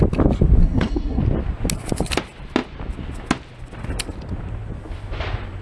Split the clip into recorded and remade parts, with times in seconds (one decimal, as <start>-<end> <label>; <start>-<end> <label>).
0.0-0.6 recorded; 0.6-1.2 remade; 1.2-5.6 recorded